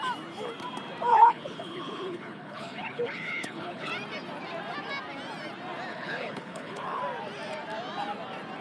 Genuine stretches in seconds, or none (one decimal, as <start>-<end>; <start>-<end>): 0.0-1.1; 3.9-5.9; 7.0-8.6